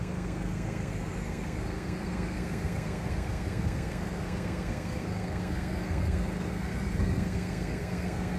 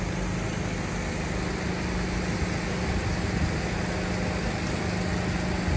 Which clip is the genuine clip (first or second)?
second